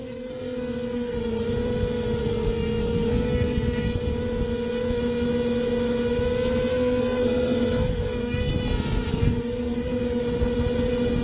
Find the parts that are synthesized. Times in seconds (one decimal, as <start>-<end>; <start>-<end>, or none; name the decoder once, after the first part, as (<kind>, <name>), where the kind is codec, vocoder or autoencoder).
0.0-1.4 (codec, SNAC); 2.2-4.0; 6.7-8.5; 9.1-10.2